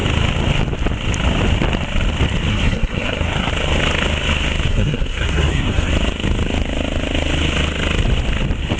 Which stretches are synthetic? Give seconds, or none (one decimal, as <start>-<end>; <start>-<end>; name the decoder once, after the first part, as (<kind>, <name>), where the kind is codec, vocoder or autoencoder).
2.5-3.5 (codec, SNAC); 4.7-5.9

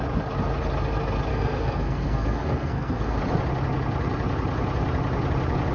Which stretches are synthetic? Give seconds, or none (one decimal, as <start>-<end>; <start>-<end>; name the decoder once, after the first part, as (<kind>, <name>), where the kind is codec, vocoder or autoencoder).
1.3-3.2 (codec, SNAC)

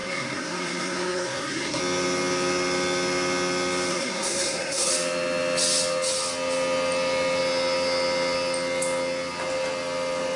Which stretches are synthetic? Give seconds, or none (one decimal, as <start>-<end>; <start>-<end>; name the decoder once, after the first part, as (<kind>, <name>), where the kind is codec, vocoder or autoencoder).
0.0-1.8 (codec, SNAC); 3.9-4.9

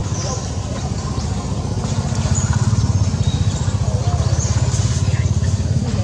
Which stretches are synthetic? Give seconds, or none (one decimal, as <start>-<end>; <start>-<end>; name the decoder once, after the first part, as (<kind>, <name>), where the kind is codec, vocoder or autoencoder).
none

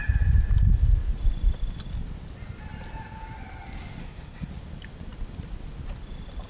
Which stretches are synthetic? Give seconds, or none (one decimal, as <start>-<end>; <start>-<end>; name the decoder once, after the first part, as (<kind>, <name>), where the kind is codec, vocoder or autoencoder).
4.0-4.5 (codec, SNAC)